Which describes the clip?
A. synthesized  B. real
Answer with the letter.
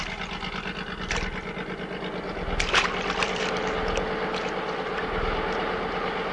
B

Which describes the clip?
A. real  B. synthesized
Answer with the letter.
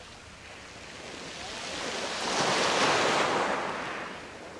A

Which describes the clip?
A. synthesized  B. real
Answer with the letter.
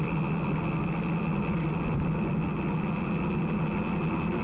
B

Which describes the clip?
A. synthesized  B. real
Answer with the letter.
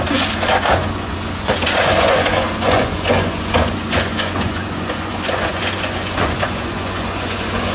A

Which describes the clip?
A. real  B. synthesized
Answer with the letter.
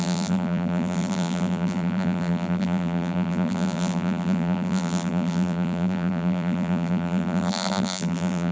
B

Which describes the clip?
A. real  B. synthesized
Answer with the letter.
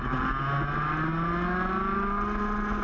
A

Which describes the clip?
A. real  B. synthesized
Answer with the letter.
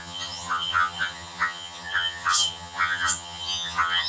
B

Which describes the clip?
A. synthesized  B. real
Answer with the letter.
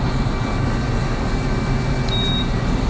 B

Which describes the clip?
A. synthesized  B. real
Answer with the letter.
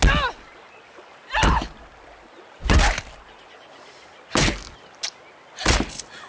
B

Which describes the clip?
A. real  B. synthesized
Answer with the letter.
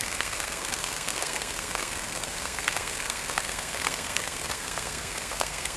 B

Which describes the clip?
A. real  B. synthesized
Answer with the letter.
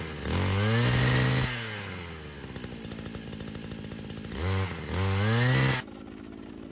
A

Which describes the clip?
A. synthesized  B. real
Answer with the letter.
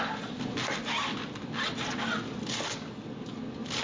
B